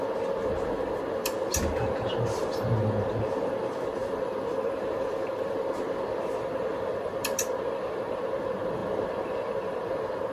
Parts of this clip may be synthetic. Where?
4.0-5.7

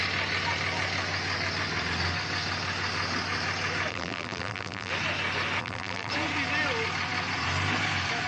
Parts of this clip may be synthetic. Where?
3.9-4.9; 5.6-6.1

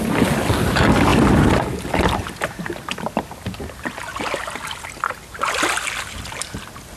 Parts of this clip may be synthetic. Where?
none